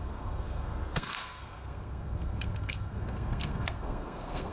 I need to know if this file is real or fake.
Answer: fake